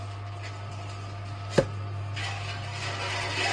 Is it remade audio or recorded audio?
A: recorded